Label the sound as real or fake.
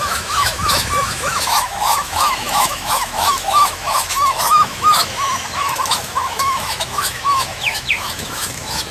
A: fake